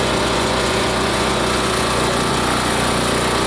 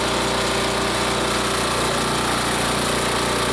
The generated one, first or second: first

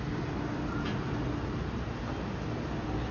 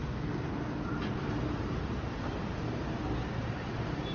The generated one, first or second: second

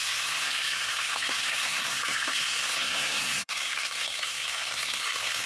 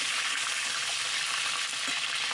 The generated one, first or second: first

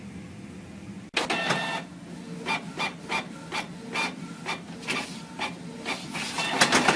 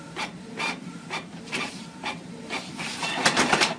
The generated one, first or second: second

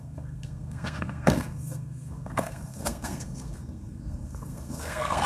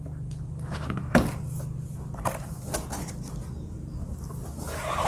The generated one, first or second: first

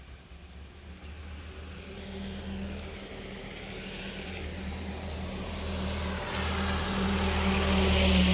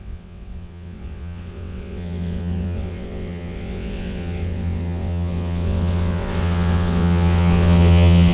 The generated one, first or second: second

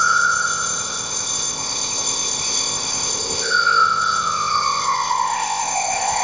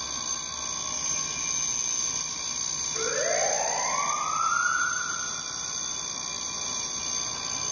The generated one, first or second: first